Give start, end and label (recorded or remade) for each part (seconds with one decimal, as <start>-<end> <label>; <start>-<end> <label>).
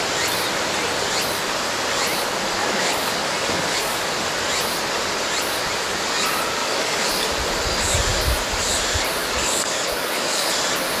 0.0-2.6 recorded; 2.6-4.1 remade; 4.1-6.6 recorded; 6.6-7.1 remade; 7.1-9.2 recorded; 9.2-10.5 remade; 10.5-11.0 recorded